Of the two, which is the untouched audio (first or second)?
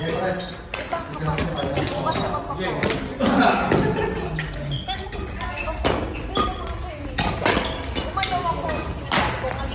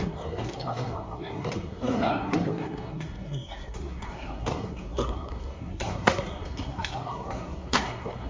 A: first